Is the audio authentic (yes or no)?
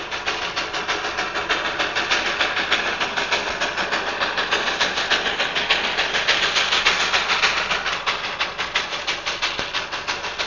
yes